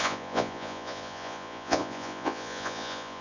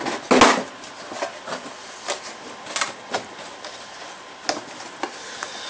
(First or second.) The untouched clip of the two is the second